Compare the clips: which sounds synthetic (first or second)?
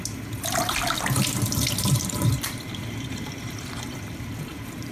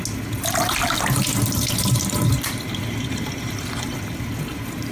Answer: first